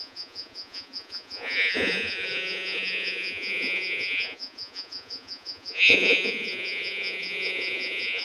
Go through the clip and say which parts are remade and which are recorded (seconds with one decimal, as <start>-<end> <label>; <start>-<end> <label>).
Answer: 0.0-8.2 remade